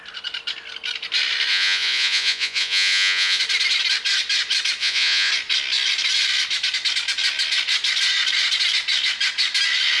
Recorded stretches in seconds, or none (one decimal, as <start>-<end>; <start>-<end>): 0.0-1.5; 3.4-4.8; 5.3-10.0